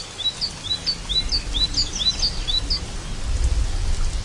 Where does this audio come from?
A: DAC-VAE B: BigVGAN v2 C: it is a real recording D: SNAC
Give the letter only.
C